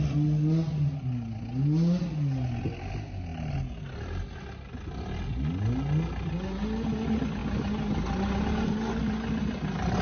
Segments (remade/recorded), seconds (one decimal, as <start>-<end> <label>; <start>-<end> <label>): 0.0-10.0 recorded